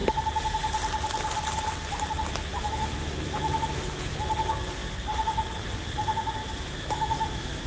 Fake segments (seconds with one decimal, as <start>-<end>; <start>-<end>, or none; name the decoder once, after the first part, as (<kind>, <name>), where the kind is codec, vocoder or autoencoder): 2.5-4.3 (autoencoder, DAC-VAE); 6.4-7.7